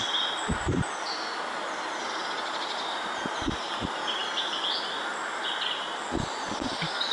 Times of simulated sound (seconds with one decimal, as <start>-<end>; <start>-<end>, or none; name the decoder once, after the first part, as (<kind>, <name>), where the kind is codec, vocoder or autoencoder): none